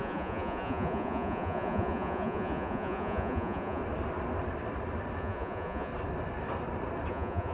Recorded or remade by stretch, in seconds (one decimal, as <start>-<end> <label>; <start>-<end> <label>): 0.0-3.8 remade; 3.8-5.2 recorded; 5.2-5.9 remade; 5.9-7.1 recorded; 7.1-7.5 remade